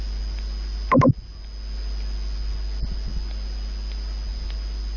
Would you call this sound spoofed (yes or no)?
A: no